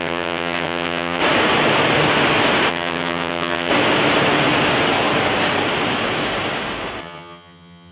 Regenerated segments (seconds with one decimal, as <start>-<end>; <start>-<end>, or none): 0.0-1.2; 2.7-3.7; 7.0-7.9